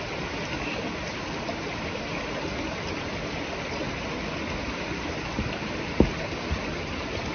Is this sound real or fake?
real